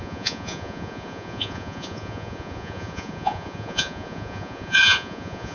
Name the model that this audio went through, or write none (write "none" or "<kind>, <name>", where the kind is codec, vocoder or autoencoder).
vocoder, Vocos